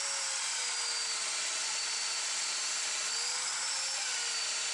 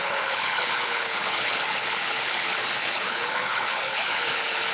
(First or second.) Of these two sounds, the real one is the first